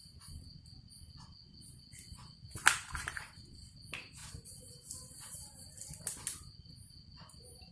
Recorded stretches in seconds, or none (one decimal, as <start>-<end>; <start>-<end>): 0.0-7.7